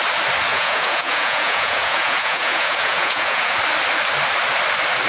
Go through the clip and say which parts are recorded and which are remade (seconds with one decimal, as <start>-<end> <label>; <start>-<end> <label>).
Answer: 0.0-0.5 recorded; 0.5-3.6 remade; 3.6-5.1 recorded